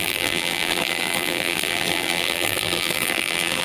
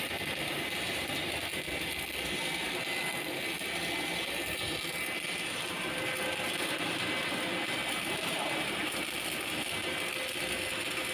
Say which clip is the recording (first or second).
second